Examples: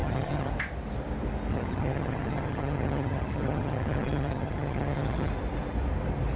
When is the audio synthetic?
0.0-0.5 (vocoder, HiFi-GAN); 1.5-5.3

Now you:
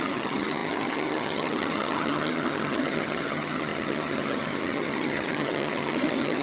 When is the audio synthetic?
0.0-6.4 (vocoder, HiFi-GAN)

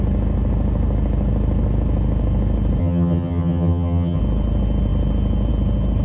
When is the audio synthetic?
2.8-4.2 (vocoder, HiFi-GAN)

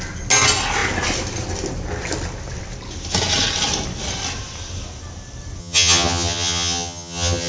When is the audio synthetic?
5.6-7.5 (vocoder, HiFi-GAN)

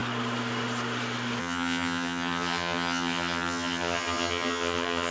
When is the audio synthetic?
1.4-5.1 (vocoder, HiFi-GAN)